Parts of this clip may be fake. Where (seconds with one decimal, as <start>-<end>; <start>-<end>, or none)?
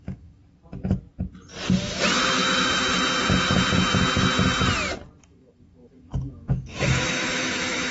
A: 0.0-0.4; 2.3-2.7; 5.2-7.9